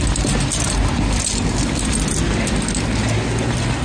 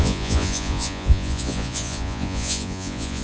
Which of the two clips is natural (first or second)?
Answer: first